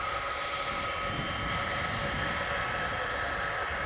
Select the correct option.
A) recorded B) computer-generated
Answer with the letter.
A